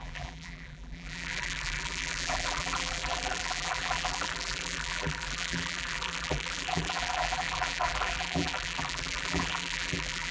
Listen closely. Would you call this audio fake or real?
fake